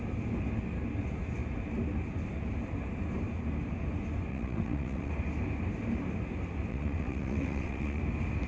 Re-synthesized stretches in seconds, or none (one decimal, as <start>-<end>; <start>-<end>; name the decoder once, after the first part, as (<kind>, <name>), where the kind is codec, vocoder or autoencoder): 4.3-5.1 (vocoder, WaveNeXt); 6.7-8.0